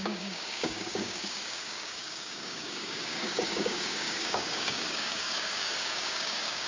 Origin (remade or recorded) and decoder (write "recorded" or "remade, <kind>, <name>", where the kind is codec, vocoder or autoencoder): remade, codec, DAC